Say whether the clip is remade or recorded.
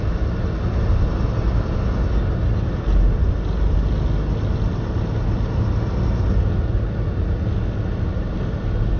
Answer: recorded